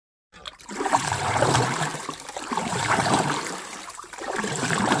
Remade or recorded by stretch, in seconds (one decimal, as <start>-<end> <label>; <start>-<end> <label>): 0.0-5.0 remade